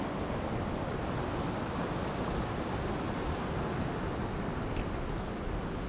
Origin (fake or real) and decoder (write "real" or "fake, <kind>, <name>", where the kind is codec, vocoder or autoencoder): real